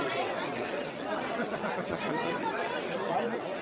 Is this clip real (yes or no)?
no